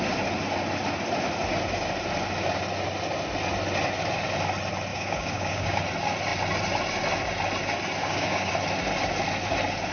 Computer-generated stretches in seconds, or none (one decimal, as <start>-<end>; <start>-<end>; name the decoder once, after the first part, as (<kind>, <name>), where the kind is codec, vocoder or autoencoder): 4.9-5.8 (codec, DAC); 8.0-8.5